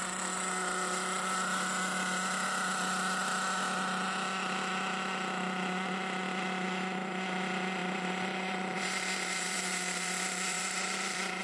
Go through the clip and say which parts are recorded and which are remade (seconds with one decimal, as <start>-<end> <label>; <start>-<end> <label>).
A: 0.0-7.8 recorded; 7.8-11.4 remade